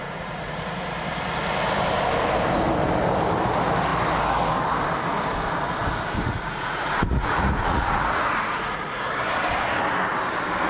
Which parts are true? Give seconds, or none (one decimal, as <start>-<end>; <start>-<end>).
0.6-6.2; 9.1-10.7